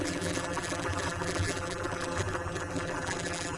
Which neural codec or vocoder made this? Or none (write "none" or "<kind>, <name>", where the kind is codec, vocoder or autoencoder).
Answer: vocoder, BigVGAN v2